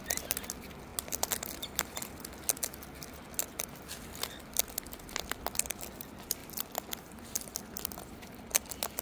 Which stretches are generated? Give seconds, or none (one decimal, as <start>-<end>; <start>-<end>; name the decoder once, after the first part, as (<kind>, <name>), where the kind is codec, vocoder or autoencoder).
none